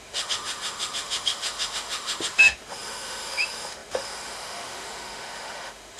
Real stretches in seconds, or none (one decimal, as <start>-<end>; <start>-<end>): none

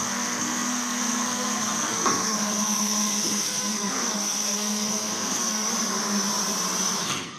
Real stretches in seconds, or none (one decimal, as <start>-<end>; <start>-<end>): 5.7-7.0